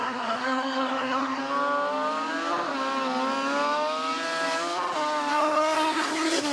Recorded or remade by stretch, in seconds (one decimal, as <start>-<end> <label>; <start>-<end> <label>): 0.0-1.4 remade; 1.4-5.3 recorded; 5.3-6.5 remade